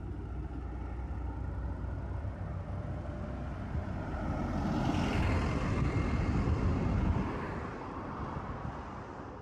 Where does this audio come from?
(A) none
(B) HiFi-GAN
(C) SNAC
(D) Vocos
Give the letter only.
A